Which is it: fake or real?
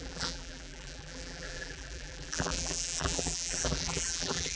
fake